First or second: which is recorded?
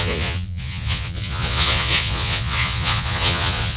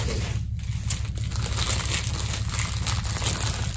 second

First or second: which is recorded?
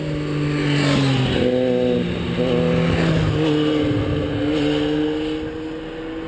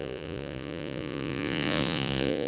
first